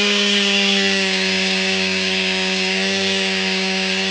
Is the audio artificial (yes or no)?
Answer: yes